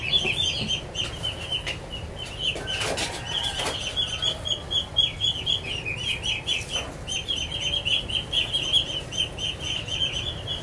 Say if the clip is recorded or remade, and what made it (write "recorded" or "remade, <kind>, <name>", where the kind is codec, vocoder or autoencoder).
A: recorded